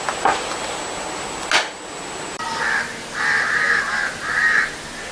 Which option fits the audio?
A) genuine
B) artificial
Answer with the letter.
A